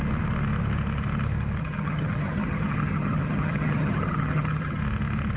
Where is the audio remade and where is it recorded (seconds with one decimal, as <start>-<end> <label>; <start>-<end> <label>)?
0.0-1.6 recorded; 1.6-4.8 remade; 4.8-5.4 recorded